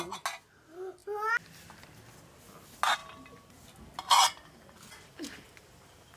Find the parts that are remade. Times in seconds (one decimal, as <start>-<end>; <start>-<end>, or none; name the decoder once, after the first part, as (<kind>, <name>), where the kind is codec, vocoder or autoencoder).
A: none